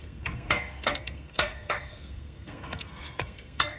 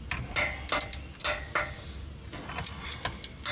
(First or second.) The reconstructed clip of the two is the first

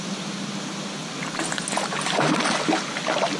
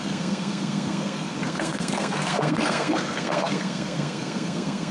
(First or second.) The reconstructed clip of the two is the second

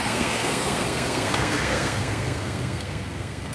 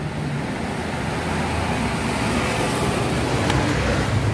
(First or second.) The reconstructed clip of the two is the first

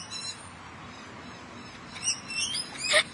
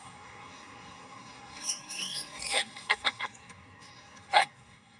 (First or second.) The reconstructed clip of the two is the second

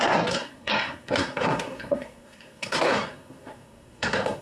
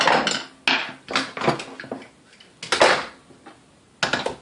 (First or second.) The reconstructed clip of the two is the first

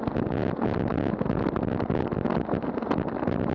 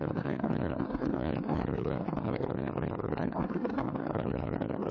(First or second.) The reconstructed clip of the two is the second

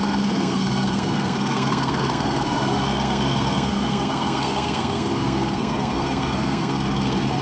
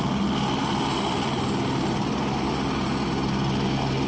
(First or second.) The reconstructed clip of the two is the first